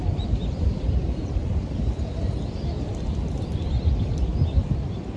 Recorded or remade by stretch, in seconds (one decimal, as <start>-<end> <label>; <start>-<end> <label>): 0.0-4.3 remade; 4.3-5.2 recorded